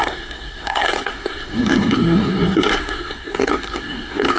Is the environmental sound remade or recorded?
remade